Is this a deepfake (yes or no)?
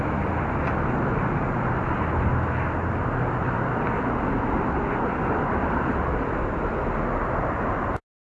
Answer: no